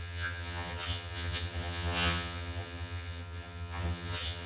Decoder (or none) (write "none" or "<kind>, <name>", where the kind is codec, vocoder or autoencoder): vocoder, HiFi-GAN